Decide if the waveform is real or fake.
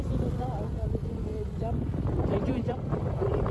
real